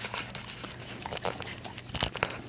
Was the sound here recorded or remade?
recorded